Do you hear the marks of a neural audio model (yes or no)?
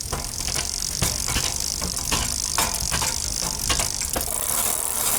no